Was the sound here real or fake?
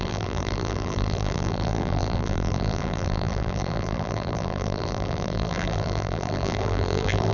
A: fake